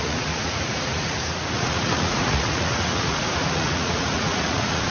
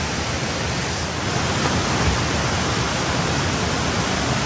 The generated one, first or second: first